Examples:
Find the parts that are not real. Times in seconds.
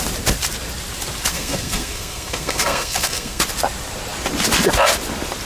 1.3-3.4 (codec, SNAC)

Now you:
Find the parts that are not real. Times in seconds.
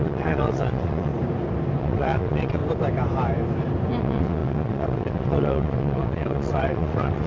0.0-1.1 (vocoder, WaveNeXt); 1.8-2.6; 4.0-7.3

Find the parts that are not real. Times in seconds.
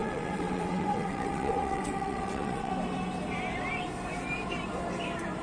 0.0-2.7 (vocoder, WaveNeXt)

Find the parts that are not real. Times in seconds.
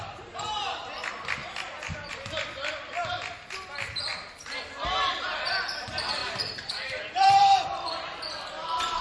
0.0-1.4 (vocoder, BigVGAN v2); 2.1-4.1; 5.1-6.2; 6.7-9.0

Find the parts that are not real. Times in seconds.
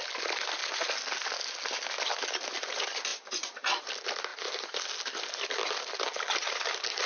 none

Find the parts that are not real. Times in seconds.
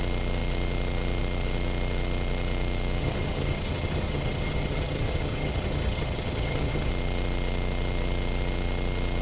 3.0-6.9 (vocoder, HiFi-GAN)